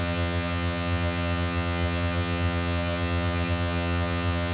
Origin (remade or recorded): remade